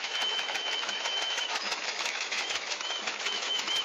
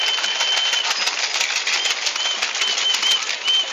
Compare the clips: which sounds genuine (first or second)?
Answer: second